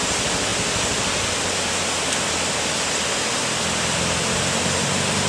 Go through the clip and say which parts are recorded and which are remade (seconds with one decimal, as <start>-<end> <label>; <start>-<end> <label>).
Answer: 0.0-5.3 recorded

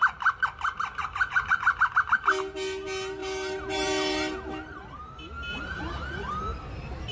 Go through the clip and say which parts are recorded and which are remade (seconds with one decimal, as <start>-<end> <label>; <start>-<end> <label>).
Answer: 0.0-1.0 recorded; 1.0-1.8 remade; 1.8-3.2 recorded; 3.2-5.8 remade; 5.8-7.1 recorded

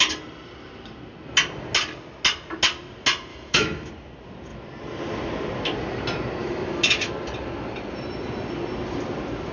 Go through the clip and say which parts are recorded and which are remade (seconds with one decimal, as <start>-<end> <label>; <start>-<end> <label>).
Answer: 0.0-3.3 recorded; 3.3-3.9 remade; 3.9-6.4 recorded; 6.4-7.1 remade; 7.1-9.5 recorded

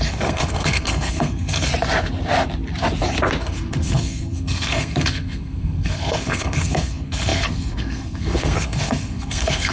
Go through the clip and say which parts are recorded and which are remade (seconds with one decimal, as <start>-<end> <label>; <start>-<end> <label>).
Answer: 0.0-1.7 remade; 1.7-3.4 recorded; 3.4-9.7 remade

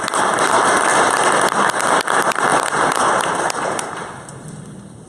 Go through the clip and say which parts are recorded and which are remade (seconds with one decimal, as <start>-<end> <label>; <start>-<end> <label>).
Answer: 0.0-5.1 recorded

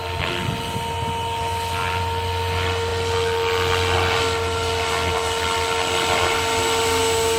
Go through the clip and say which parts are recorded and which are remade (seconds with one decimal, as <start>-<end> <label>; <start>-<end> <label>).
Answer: 0.0-7.4 recorded